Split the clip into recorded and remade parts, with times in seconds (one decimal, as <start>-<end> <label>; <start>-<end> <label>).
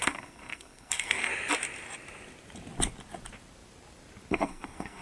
0.0-1.3 remade; 1.3-4.3 recorded; 4.3-5.0 remade